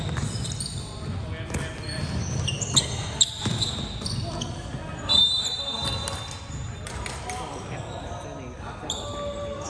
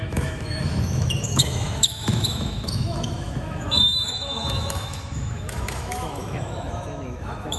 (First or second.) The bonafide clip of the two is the first